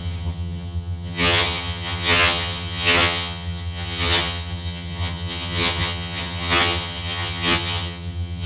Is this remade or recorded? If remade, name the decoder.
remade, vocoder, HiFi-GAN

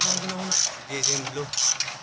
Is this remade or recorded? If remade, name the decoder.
recorded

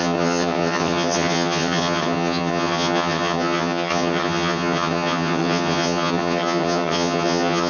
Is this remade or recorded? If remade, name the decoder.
remade, vocoder, HiFi-GAN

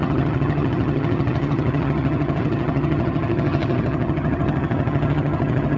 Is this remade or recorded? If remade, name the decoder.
remade, vocoder, HiFi-GAN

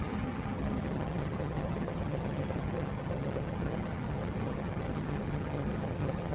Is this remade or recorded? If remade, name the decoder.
remade, vocoder, HiFi-GAN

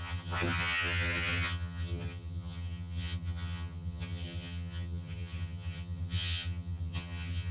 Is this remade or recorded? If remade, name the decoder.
remade, vocoder, HiFi-GAN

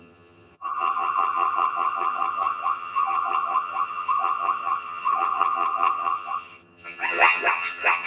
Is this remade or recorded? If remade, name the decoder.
remade, vocoder, HiFi-GAN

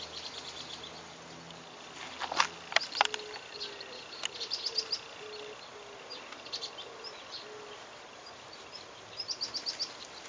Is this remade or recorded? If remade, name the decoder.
recorded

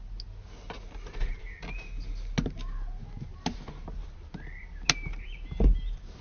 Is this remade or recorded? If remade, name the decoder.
recorded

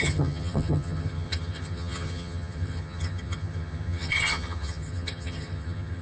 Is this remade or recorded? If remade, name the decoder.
remade, vocoder, HiFi-GAN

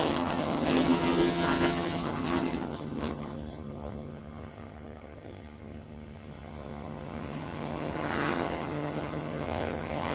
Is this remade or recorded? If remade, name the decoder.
remade, vocoder, HiFi-GAN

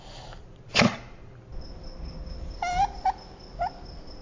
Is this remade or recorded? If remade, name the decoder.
recorded